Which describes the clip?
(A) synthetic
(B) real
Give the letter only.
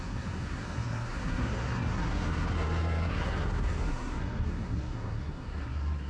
A